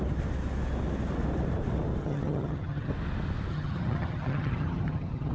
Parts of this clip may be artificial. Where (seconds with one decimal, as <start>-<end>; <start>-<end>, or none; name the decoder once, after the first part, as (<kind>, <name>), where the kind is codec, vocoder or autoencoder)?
2.0-2.9 (vocoder, HiFi-GAN); 3.5-5.3

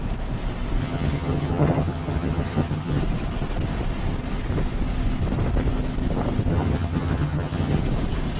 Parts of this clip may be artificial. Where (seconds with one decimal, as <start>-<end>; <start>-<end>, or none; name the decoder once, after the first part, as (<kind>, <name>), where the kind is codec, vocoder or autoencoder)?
0.8-3.0 (vocoder, HiFi-GAN); 6.5-7.8

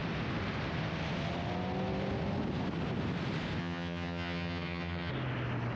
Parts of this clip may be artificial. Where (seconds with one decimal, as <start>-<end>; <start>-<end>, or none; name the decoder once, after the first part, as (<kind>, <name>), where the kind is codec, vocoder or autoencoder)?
3.6-5.1 (vocoder, HiFi-GAN)

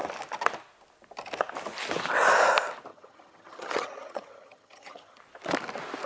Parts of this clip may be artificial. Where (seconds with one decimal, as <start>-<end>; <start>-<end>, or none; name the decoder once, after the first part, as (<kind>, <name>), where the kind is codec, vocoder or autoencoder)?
2.9-5.2 (vocoder, HiFi-GAN)

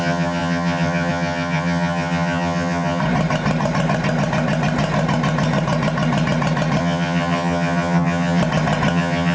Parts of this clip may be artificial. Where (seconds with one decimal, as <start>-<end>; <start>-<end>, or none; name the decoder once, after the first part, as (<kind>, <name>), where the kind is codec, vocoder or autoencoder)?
0.0-3.0 (vocoder, HiFi-GAN); 6.8-8.4; 8.9-9.3

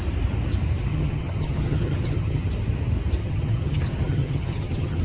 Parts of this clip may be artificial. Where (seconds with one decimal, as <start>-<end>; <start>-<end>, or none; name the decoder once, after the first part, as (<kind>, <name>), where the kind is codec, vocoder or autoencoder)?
0.9-2.5 (vocoder, HiFi-GAN); 3.2-5.0

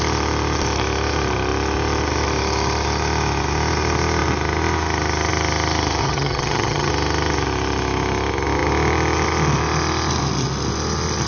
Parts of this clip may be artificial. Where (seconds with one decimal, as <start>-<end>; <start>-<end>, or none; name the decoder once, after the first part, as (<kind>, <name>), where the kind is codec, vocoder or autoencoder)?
6.0-6.9 (vocoder, HiFi-GAN)

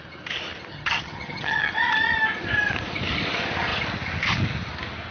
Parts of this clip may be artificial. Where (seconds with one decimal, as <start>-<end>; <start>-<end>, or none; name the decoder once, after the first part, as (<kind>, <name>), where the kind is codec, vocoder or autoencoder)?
0.7-1.7 (vocoder, HiFi-GAN)